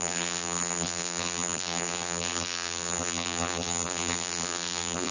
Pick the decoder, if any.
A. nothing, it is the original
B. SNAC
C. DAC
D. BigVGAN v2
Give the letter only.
D